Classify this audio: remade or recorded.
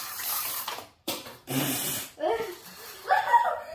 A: remade